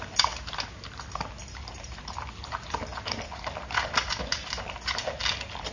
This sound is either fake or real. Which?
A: real